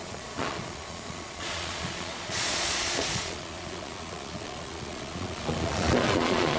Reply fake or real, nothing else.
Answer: fake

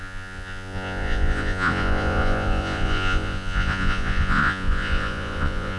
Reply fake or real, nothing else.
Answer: fake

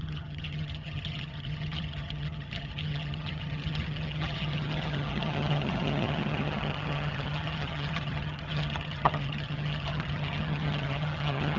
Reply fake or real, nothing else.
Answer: fake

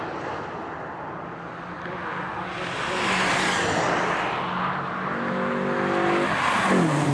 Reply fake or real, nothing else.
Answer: real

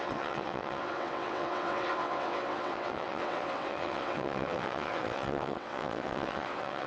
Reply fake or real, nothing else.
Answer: fake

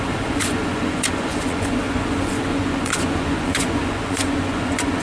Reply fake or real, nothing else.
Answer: fake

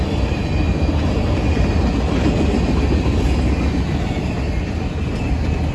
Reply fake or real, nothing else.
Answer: real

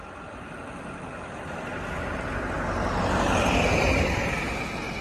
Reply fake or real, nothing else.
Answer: real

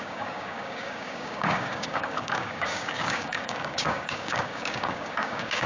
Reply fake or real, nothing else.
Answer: fake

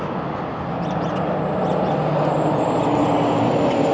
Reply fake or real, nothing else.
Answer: real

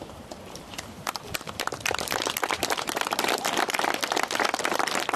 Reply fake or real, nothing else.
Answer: fake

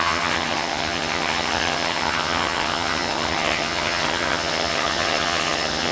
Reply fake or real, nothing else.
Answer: fake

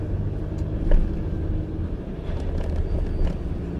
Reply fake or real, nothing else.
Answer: real